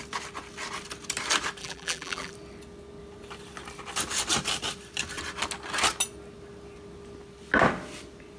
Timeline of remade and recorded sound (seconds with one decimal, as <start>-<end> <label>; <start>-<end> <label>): 0.0-1.6 recorded; 1.6-2.3 remade; 2.3-8.4 recorded